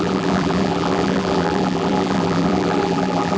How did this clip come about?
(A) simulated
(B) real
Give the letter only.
A